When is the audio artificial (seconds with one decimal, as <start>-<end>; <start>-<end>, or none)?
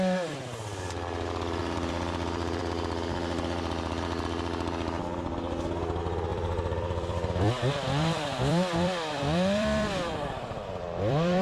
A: 1.6-2.6; 6.3-11.4